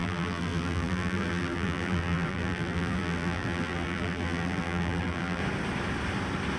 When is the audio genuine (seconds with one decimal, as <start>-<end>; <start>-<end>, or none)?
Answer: 5.4-6.6

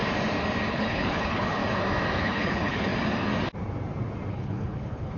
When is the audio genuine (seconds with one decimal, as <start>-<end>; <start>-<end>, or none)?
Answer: 0.0-0.7; 1.6-2.2; 2.9-4.3

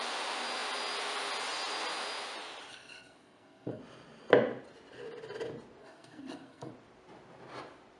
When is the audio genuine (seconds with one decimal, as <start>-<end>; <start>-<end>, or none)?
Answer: 0.0-2.7; 3.8-5.8; 6.7-8.0

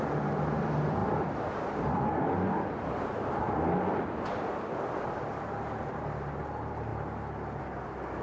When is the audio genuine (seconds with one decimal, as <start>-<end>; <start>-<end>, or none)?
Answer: 0.0-8.2

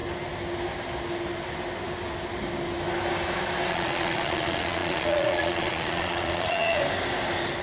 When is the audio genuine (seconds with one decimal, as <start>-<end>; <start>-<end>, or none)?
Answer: 0.0-3.7; 6.8-7.6

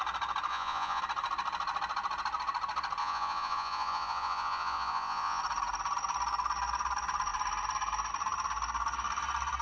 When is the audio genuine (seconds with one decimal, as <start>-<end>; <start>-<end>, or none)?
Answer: 0.0-0.5; 1.0-3.0; 5.4-9.6

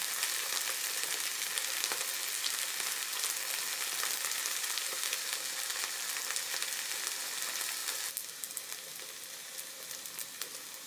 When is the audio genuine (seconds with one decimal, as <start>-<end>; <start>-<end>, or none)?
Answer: 0.0-10.9

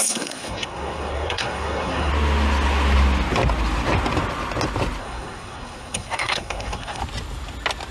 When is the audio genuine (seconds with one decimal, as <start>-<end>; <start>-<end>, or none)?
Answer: 2.1-5.0; 7.0-7.9